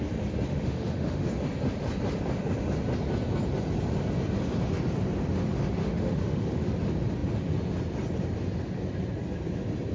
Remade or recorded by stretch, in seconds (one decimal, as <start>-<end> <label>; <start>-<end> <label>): 0.0-0.5 recorded; 0.5-1.3 remade; 1.3-5.8 recorded; 5.8-6.7 remade; 6.7-9.9 recorded